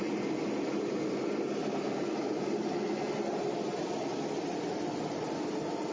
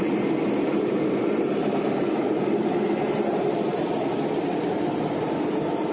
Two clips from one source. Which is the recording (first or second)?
first